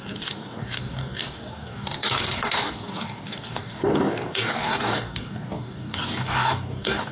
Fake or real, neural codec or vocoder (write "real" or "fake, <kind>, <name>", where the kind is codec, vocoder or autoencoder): fake, codec, DAC